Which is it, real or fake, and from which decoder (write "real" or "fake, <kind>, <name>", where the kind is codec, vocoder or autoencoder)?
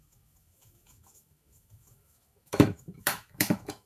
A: fake, autoencoder, DAC-VAE